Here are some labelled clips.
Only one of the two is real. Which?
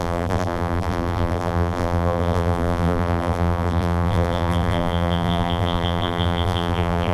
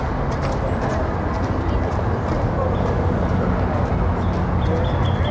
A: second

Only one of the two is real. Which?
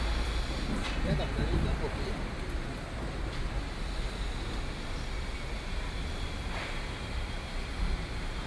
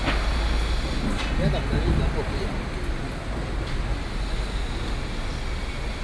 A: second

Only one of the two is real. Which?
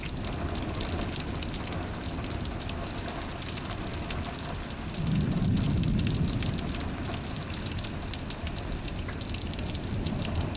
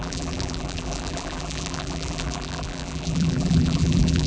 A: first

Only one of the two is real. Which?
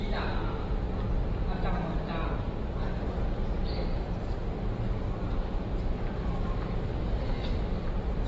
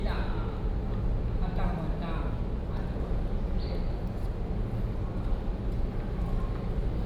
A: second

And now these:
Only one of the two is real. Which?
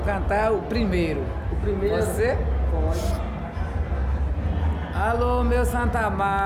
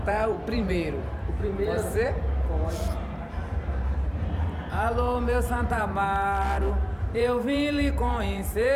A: first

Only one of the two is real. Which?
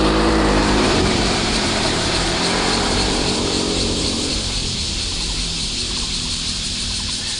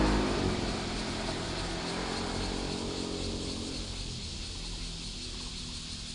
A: second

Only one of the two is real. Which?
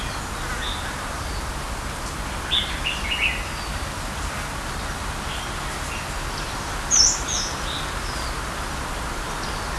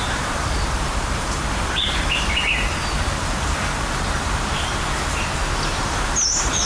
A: first